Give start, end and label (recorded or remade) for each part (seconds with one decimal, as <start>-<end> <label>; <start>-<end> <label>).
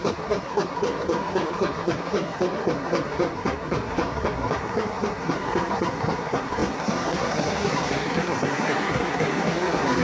0.0-10.0 remade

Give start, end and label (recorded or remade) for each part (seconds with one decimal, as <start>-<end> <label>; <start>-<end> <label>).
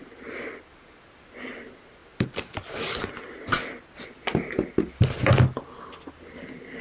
0.0-6.8 recorded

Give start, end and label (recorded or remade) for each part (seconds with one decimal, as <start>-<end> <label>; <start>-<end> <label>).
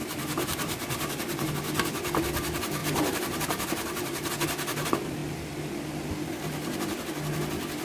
0.0-1.5 remade; 1.5-2.8 recorded; 2.8-4.3 remade; 4.3-7.8 recorded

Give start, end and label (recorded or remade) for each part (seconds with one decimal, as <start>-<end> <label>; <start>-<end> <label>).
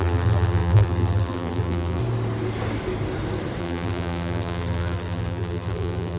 0.0-2.0 remade; 2.0-3.6 recorded; 3.6-6.2 remade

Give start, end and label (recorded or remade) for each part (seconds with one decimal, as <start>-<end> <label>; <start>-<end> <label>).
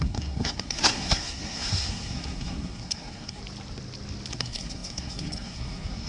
0.0-3.4 remade; 3.4-4.3 recorded; 4.3-6.1 remade